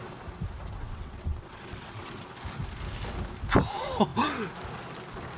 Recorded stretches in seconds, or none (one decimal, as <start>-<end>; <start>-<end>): 0.0-0.8; 2.1-5.4

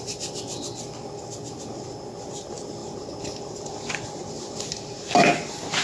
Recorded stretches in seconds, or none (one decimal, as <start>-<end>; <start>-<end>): 0.0-5.8

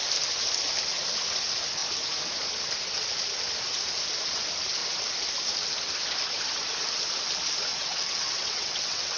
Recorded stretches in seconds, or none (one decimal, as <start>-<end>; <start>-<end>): 0.0-7.7

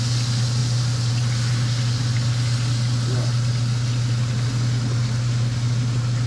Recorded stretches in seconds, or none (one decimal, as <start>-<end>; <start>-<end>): 0.0-6.3

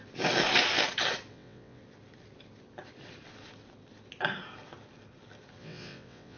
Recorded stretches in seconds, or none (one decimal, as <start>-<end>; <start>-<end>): 0.0-1.3; 1.8-5.6

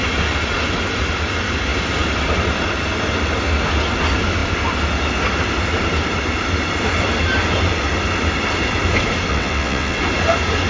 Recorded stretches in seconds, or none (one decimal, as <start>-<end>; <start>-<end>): 0.0-9.3; 10.0-10.7

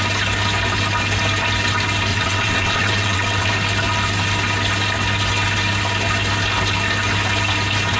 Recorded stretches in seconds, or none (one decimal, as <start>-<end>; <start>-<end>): 0.0-2.1; 3.5-8.0

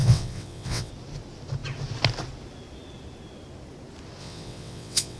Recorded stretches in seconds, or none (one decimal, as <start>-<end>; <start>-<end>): 0.9-4.2